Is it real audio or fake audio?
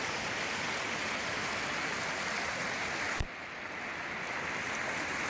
real